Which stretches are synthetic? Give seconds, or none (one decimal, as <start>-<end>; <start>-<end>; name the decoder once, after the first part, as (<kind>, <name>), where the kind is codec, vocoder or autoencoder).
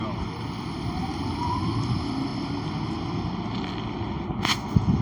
none